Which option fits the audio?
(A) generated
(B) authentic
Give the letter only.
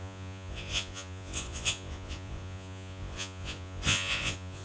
A